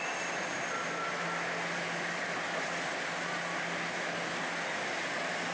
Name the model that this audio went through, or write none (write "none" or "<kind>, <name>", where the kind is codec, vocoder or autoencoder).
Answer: none